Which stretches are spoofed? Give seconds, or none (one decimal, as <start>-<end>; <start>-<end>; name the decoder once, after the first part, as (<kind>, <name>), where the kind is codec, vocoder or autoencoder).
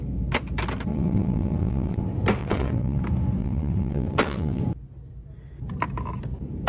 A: 0.9-2.0 (vocoder, WaveNeXt); 2.4-3.0; 3.4-4.6